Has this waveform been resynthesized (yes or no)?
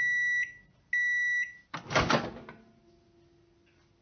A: no